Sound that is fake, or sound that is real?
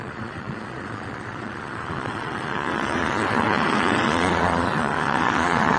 fake